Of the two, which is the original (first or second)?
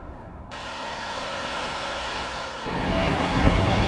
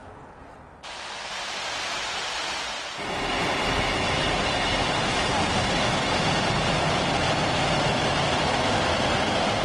second